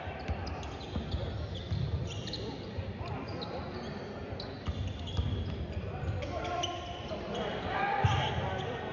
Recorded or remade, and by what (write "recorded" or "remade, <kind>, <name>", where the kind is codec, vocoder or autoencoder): recorded